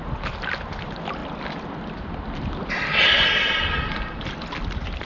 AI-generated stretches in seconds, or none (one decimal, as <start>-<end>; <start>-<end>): none